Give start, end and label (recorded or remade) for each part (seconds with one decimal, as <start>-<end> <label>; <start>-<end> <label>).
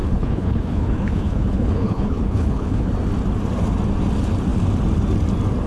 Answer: 0.0-2.9 remade; 2.9-5.7 recorded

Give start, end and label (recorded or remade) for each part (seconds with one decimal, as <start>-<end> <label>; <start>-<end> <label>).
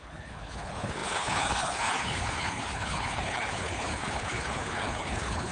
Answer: 0.0-5.5 remade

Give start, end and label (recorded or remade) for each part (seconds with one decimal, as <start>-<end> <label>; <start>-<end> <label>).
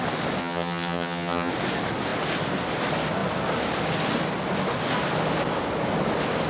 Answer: 0.0-0.4 recorded; 0.4-1.5 remade; 1.5-6.5 recorded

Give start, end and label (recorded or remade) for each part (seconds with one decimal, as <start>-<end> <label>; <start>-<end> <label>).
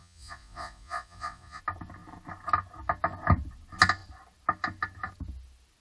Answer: 0.0-1.6 remade; 1.6-5.8 recorded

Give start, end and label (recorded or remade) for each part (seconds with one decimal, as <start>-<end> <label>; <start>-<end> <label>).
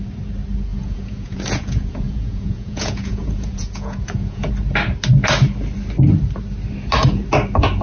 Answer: 0.0-0.7 recorded; 0.7-4.5 remade; 4.5-7.8 recorded